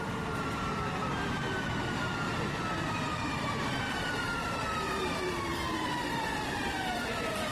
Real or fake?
fake